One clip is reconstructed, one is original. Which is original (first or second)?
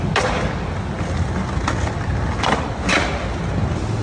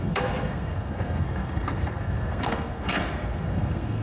first